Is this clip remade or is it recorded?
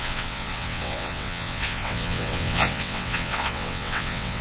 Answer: remade